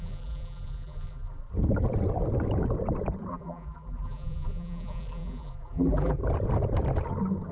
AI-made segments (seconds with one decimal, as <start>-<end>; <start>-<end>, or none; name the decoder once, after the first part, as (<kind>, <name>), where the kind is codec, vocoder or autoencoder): 0.0-1.4 (vocoder, BigVGAN v2); 3.3-6.2